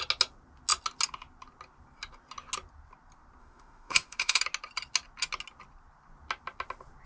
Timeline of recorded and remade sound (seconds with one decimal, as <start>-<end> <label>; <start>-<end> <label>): 0.0-3.4 recorded; 3.4-4.4 remade; 4.4-7.1 recorded